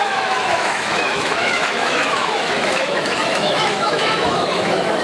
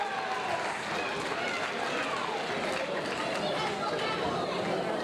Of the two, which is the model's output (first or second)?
first